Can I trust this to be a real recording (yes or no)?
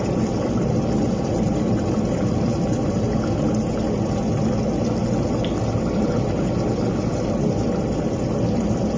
yes